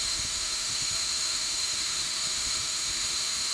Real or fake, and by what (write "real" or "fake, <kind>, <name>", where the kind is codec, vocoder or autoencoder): fake, autoencoder, DAC-VAE